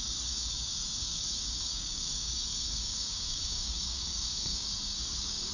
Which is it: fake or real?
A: fake